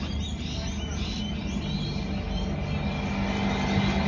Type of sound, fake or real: real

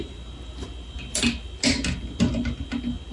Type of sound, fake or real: real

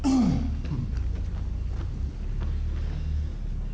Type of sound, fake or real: real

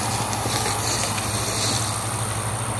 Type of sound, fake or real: real